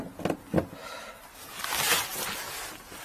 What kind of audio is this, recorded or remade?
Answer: recorded